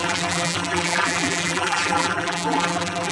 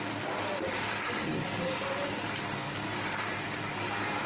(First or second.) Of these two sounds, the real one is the second